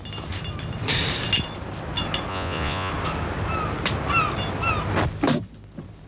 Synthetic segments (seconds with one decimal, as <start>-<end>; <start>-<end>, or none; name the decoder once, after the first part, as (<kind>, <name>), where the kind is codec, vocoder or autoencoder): 2.3-2.9 (vocoder, Vocos)